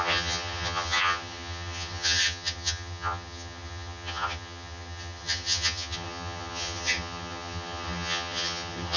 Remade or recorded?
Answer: remade